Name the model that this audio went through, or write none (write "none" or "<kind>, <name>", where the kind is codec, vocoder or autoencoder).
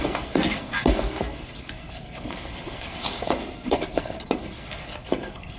codec, SNAC